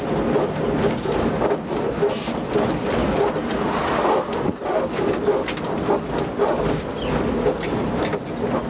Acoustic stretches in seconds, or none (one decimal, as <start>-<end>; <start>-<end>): 0.0-8.7